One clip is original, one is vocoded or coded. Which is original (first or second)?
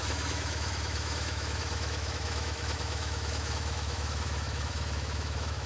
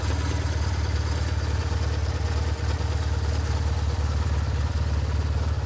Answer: second